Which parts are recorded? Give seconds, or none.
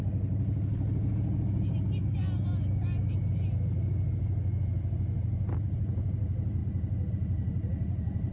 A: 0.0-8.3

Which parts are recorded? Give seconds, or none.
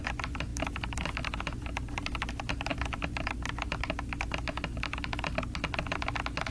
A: 0.0-6.5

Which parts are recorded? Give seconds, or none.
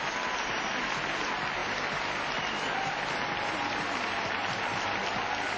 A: 0.0-5.6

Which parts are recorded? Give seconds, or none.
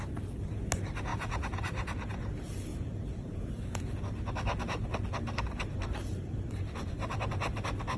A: 0.0-1.1; 2.3-2.7; 4.0-8.0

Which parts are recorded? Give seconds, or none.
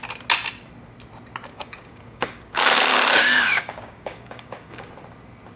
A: 0.0-1.5; 4.9-5.6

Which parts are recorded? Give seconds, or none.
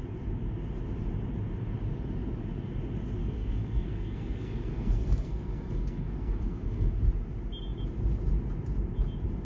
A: 0.0-3.2; 7.0-9.4